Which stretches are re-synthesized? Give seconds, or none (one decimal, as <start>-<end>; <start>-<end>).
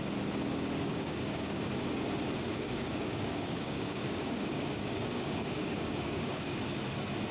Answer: 0.9-1.7; 2.5-6.6